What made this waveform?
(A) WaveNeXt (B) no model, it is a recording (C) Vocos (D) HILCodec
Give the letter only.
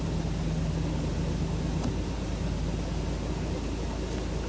B